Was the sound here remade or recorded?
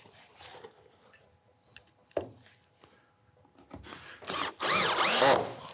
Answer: recorded